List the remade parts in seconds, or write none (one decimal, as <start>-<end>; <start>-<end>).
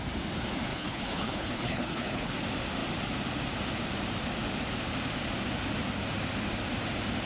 0.7-2.3